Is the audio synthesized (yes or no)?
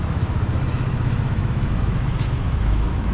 yes